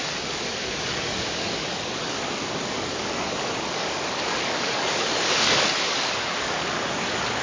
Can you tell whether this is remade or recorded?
remade